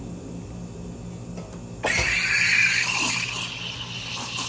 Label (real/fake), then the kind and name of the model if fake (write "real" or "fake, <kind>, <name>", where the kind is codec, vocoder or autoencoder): real